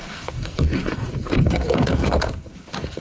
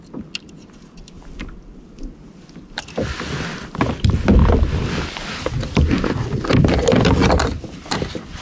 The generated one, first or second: first